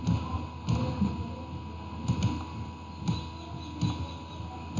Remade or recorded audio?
recorded